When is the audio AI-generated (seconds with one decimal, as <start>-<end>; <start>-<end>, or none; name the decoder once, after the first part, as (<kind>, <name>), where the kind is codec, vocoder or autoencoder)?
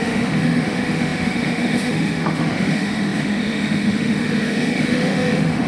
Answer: 0.0-5.7 (autoencoder, DAC-VAE)